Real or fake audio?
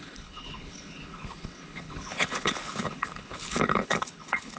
fake